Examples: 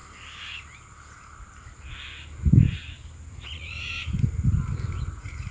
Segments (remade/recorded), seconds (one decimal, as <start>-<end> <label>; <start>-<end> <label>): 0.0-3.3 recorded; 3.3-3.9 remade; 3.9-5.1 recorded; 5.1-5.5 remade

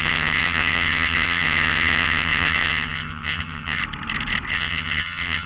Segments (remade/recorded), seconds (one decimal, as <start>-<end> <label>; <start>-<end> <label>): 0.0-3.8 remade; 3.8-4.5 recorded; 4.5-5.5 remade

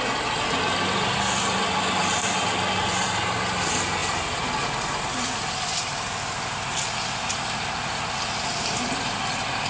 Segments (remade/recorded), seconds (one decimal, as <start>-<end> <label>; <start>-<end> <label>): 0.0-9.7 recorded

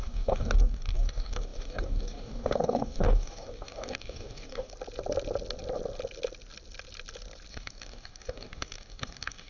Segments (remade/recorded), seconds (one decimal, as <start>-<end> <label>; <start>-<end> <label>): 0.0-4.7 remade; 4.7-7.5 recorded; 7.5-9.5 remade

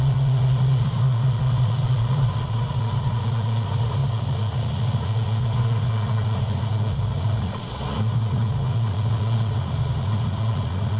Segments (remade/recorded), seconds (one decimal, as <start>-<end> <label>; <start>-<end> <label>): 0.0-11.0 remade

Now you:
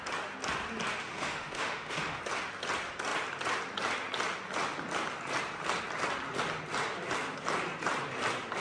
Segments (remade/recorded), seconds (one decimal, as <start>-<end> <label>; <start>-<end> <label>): 0.0-1.0 recorded; 1.0-2.2 remade; 2.2-8.6 recorded

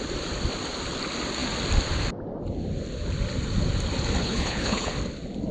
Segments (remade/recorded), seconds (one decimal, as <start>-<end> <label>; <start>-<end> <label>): 0.0-4.2 recorded; 4.2-4.9 remade; 4.9-5.5 recorded

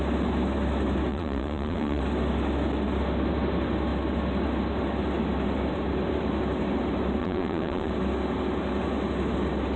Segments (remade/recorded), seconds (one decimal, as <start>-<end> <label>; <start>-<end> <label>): 0.0-1.1 recorded; 1.1-2.0 remade; 2.0-7.2 recorded; 7.2-7.9 remade; 7.9-9.8 recorded